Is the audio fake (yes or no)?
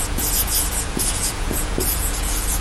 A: yes